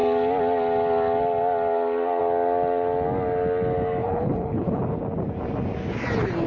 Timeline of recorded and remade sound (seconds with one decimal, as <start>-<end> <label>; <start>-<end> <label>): 0.0-4.0 recorded; 4.0-4.8 remade; 4.8-6.5 recorded